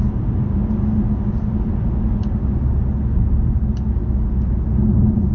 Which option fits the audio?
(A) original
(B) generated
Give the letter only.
A